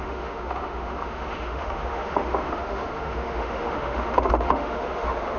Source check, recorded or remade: remade